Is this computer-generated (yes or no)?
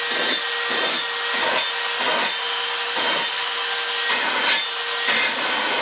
no